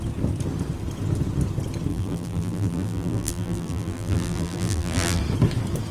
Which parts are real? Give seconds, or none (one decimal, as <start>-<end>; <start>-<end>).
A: 0.0-1.9; 5.2-5.9